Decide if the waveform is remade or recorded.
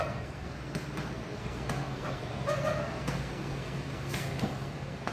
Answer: remade